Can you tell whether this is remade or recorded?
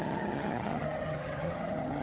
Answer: remade